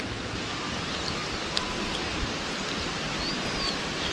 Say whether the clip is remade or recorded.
recorded